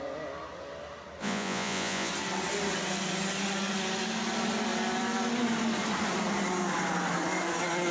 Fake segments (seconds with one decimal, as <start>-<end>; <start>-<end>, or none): 1.2-2.1